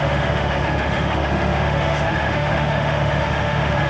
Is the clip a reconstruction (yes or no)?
yes